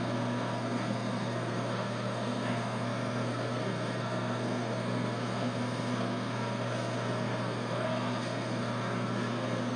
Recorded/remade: remade